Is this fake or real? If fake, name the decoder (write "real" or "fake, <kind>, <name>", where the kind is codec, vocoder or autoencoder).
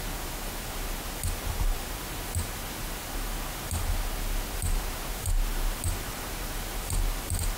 real